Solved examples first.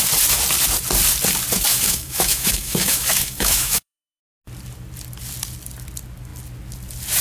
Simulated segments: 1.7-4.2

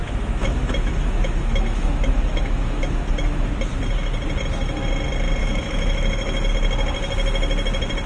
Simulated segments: 0.0-3.5; 5.4-6.5

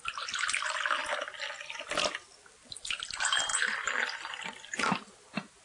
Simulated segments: 1.0-1.5; 3.5-4.4

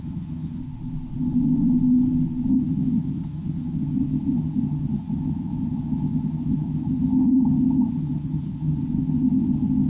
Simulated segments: 0.0-0.6; 2.5-9.9

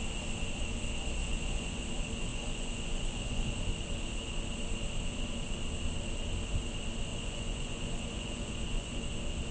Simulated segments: 1.2-1.8; 2.3-3.6; 7.1-9.0

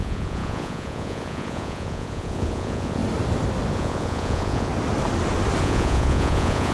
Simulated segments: 0.0-3.0; 3.7-4.7; 5.6-6.7

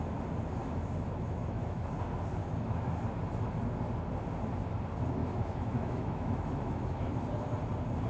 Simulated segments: 0.6-1.9; 2.4-3.0; 5.2-7.0

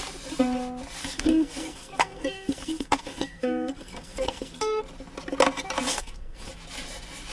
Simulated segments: 1.0-4.8; 5.9-6.5